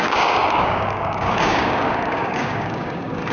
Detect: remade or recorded remade